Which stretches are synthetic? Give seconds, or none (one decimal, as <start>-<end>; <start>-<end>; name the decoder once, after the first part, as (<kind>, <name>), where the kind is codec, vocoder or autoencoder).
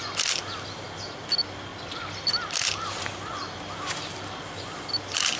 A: none